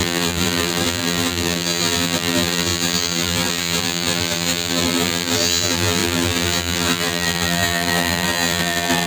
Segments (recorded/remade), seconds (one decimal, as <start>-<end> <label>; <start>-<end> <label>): 0.0-9.1 remade

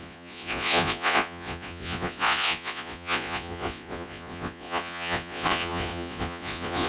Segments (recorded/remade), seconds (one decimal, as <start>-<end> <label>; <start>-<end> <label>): 0.0-6.9 remade